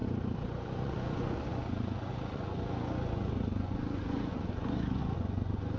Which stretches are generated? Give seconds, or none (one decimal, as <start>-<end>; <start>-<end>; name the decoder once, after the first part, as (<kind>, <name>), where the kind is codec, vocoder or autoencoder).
0.6-5.8 (vocoder, Vocos)